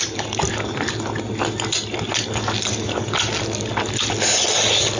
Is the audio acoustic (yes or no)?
yes